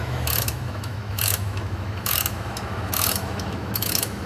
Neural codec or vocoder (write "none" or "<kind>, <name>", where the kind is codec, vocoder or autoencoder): autoencoder, DAC-VAE